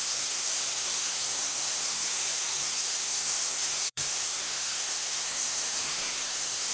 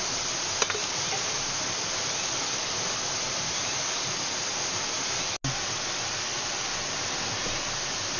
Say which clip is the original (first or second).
second